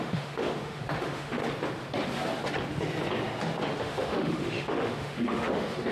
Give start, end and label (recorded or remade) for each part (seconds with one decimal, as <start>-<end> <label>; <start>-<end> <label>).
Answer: 0.0-1.4 remade; 1.4-3.8 recorded; 3.8-5.9 remade